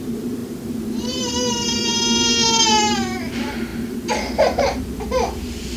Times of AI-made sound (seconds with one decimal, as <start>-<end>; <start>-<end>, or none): 0.0-1.9; 3.2-5.8